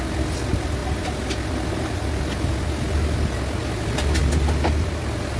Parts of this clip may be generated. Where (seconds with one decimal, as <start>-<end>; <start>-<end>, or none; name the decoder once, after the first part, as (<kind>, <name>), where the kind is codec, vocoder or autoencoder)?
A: none